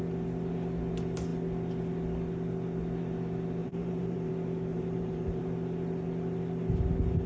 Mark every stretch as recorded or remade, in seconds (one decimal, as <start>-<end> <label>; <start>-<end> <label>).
0.0-3.6 recorded; 3.6-4.3 remade; 4.3-4.7 recorded; 4.7-5.4 remade; 5.4-7.3 recorded